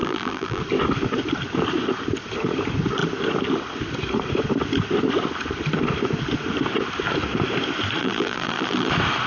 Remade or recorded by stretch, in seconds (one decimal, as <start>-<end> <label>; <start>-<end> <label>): 0.0-0.6 remade; 0.6-8.0 recorded; 8.0-8.9 remade; 8.9-9.3 recorded